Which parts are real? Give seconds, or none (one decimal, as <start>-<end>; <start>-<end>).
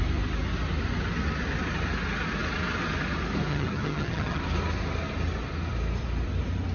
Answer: 0.0-3.5; 4.4-6.7